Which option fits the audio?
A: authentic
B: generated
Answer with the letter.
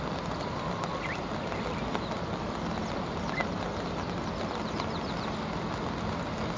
A